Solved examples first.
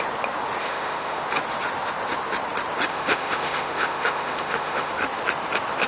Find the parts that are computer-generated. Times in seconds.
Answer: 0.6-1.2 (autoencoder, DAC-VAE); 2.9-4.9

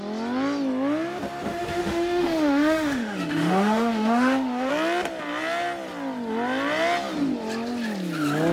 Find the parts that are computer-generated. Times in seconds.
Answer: 1.5-4.7 (autoencoder, DAC-VAE)

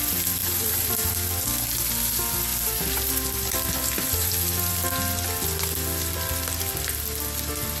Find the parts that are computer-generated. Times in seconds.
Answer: 0.4-1.1 (vocoder, BigVGAN v2); 2.5-4.7

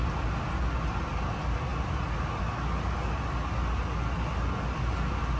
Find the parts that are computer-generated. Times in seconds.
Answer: none